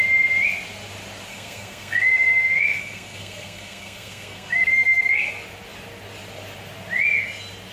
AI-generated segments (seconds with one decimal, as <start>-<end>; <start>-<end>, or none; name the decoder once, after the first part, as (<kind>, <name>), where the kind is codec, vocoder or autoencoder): 1.3-5.2 (codec, SNAC)